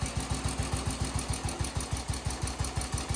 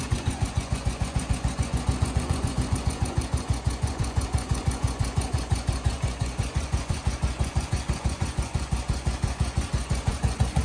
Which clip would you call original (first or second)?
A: first